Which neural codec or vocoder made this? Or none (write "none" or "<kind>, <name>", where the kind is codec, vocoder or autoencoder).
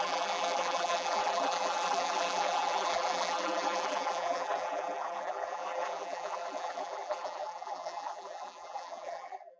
vocoder, BigVGAN v2